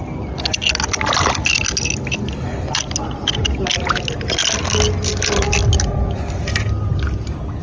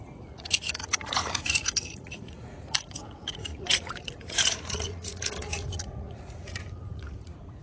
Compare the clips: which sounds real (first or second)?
first